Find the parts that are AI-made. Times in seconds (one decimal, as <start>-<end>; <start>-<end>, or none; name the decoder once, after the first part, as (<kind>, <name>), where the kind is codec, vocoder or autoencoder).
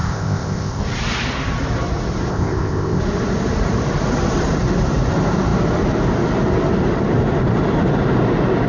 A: 0.0-0.8 (codec, ZipCodec); 2.3-3.0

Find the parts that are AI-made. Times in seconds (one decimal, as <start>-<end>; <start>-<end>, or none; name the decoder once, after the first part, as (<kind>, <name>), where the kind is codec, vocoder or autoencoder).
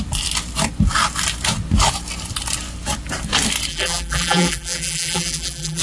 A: 3.7-5.8 (vocoder, BigVGAN v2)